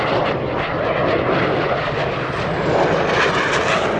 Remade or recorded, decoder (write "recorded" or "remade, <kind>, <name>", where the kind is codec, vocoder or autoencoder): recorded